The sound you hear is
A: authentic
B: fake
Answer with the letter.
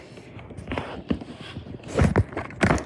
A